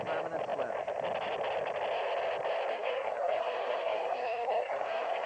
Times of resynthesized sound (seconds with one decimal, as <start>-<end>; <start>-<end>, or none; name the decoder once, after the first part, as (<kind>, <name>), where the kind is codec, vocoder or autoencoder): 2.7-5.3 (codec, SNAC)